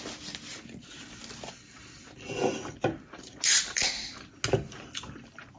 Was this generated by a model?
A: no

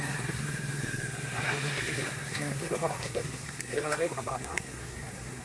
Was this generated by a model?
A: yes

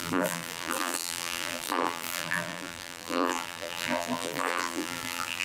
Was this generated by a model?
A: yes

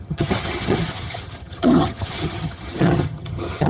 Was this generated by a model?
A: yes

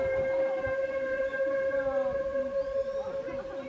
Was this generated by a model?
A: no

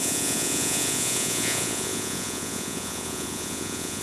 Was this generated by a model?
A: yes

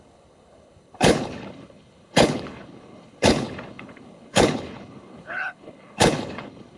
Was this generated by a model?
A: yes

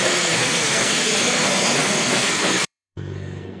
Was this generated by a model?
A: yes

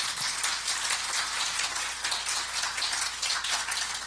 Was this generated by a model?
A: no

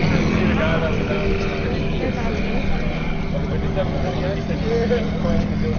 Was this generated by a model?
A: no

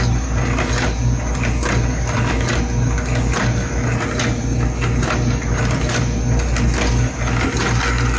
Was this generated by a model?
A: no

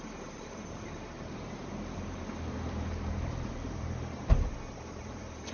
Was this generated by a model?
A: yes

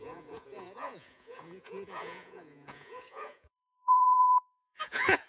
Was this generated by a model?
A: yes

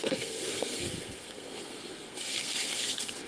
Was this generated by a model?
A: yes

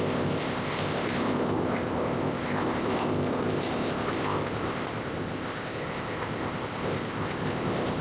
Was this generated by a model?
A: yes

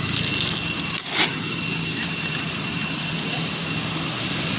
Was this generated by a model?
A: no